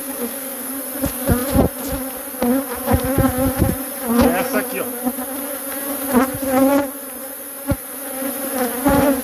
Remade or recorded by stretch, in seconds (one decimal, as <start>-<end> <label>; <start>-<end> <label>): 0.0-0.7 remade; 0.7-9.2 recorded